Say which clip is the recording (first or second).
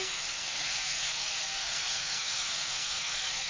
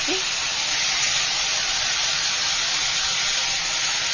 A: second